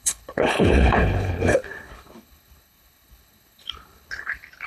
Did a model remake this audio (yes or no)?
yes